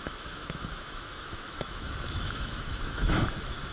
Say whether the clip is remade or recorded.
remade